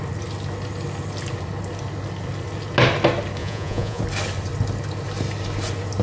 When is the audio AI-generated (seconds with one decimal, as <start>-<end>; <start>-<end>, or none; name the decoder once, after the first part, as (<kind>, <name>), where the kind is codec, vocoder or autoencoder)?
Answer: 3.4-4.0 (vocoder, Vocos)